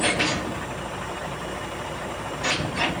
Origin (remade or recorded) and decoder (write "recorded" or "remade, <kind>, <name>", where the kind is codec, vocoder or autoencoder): recorded